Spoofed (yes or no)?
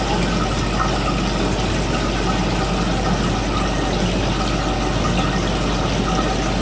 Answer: no